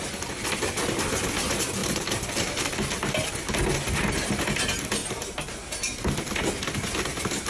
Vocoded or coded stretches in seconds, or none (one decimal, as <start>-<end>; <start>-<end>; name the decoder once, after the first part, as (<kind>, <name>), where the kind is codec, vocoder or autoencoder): 1.8-3.6 (vocoder, BigVGAN v2); 5.0-5.5